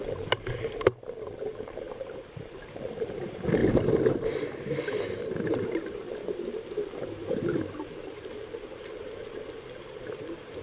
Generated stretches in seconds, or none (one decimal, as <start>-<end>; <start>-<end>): 0.0-3.6; 5.1-10.6